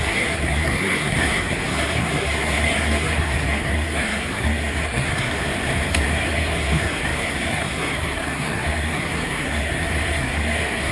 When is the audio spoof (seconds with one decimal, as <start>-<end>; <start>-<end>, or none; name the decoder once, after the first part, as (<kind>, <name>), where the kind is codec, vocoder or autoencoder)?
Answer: 0.0-5.4 (codec, SNAC); 5.9-10.9